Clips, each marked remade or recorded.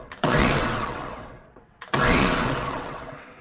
remade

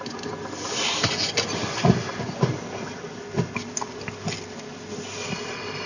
recorded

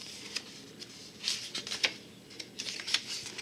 recorded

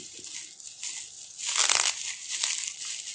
recorded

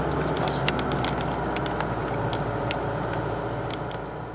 recorded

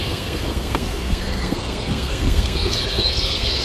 remade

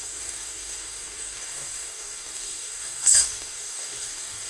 remade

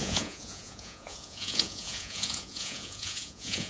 remade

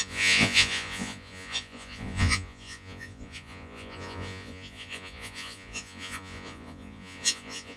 remade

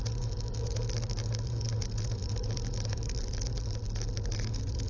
recorded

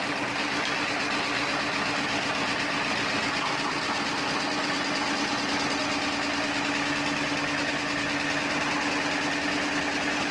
recorded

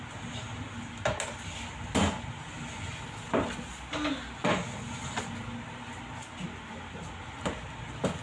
recorded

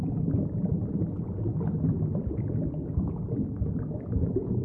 recorded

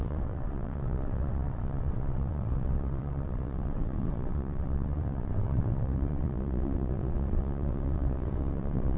remade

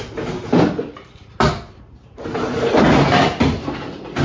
recorded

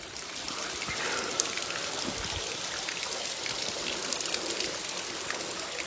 recorded